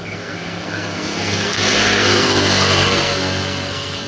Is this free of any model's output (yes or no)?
no